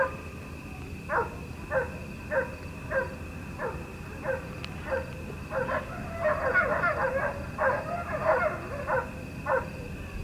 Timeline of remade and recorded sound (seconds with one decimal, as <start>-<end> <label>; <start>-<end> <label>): 0.0-10.2 recorded